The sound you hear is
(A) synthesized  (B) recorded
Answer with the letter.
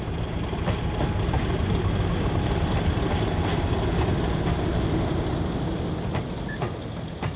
B